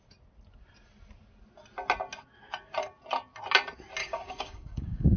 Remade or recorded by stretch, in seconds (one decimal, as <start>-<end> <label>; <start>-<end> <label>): 0.0-4.0 recorded; 4.0-5.2 remade